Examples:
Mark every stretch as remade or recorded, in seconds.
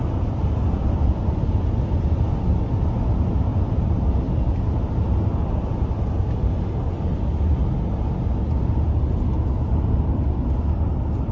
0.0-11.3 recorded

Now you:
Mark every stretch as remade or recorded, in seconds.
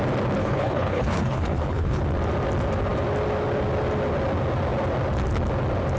0.0-0.4 recorded; 0.4-2.0 remade; 2.0-6.0 recorded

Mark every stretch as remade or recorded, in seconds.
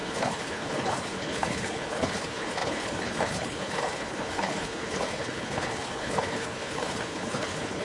0.0-7.8 remade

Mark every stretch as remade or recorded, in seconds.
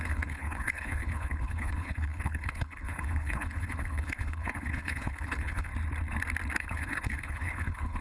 0.0-5.7 remade; 5.7-6.6 recorded; 6.6-8.0 remade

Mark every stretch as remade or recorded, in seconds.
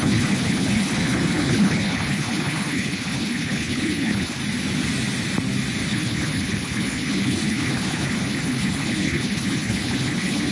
0.0-4.4 remade; 4.4-5.9 recorded; 5.9-10.5 remade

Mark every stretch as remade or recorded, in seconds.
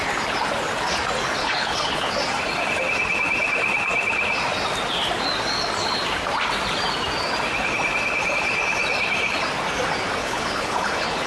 0.0-1.4 recorded; 1.4-2.1 remade; 2.1-10.2 recorded; 10.2-11.3 remade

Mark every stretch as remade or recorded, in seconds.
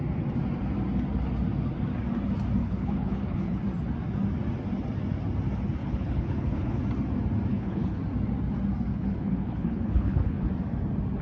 0.0-2.6 recorded; 2.6-3.6 remade; 3.6-5.8 recorded; 5.8-6.8 remade; 6.8-7.5 recorded; 7.5-8.0 remade; 8.0-8.9 recorded; 8.9-10.5 remade; 10.5-11.2 recorded